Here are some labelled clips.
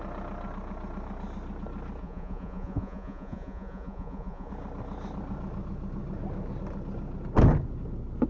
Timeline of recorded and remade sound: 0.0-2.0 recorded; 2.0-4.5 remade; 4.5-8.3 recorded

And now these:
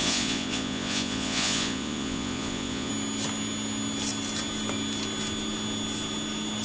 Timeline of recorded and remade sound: 0.0-2.9 remade; 2.9-6.6 recorded

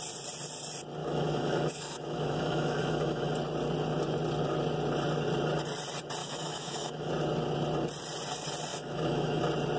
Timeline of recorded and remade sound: 0.0-1.0 recorded; 1.0-3.3 remade; 3.3-6.2 recorded; 6.2-7.1 remade; 7.1-8.7 recorded; 8.7-9.4 remade; 9.4-9.8 recorded

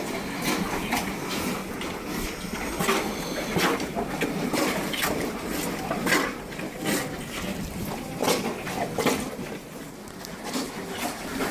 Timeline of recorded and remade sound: 0.0-11.5 recorded

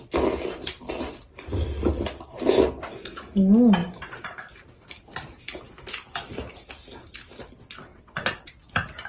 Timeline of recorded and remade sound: 0.0-7.9 recorded; 7.9-8.5 remade; 8.5-9.1 recorded

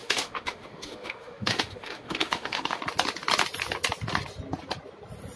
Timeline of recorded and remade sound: 0.0-2.8 remade; 2.8-5.4 recorded

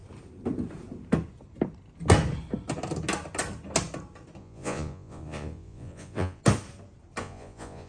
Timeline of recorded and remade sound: 0.0-4.4 recorded; 4.4-6.4 remade; 6.4-7.2 recorded; 7.2-7.9 remade